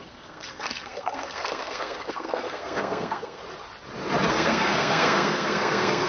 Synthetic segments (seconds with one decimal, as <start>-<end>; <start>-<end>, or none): 0.0-3.4; 4.3-6.1